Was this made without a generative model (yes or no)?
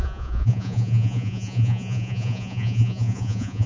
no